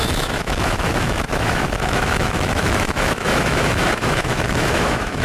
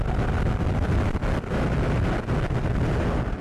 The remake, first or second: first